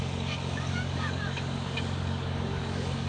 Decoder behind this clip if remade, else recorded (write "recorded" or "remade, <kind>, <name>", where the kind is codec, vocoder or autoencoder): remade, codec, DAC